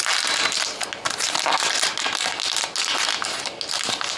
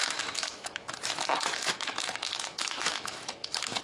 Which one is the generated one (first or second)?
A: second